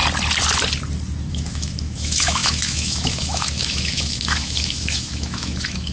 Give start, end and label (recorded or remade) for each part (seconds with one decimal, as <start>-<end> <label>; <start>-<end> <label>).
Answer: 0.0-1.3 recorded; 1.3-5.9 remade